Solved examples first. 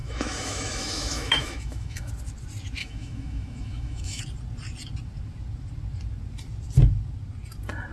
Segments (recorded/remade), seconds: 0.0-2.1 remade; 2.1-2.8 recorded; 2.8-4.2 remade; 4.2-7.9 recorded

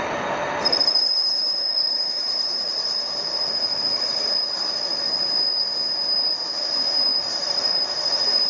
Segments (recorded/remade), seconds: 0.0-8.5 recorded

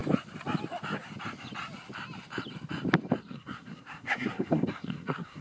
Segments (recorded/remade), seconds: 0.0-3.2 recorded; 3.2-5.4 remade

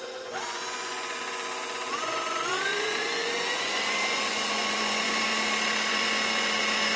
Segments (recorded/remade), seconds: 0.0-5.3 remade; 5.3-5.9 recorded; 5.9-7.0 remade

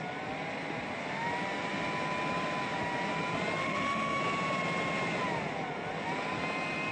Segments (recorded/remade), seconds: 0.0-3.6 recorded; 3.6-4.2 remade; 4.2-6.9 recorded

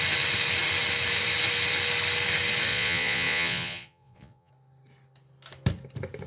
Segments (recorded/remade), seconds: 0.0-2.7 recorded; 2.7-4.5 remade; 4.5-6.3 recorded